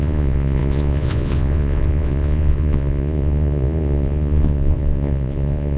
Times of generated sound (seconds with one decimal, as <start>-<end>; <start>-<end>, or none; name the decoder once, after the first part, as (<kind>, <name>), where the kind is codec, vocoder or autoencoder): 0.0-5.8 (vocoder, Vocos)